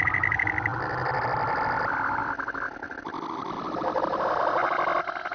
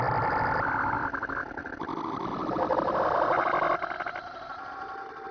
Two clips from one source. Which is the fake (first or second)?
second